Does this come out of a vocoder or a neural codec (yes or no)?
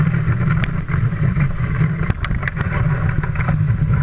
no